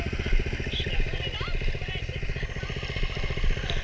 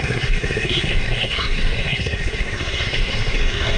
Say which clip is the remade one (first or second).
second